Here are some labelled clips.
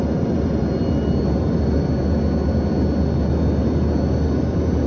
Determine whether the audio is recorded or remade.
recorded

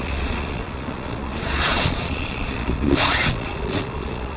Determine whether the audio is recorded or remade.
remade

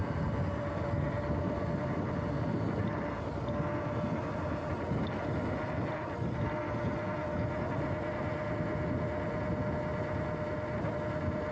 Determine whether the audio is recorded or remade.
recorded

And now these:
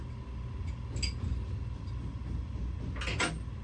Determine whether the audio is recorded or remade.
recorded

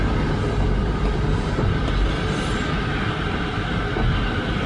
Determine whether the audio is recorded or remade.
recorded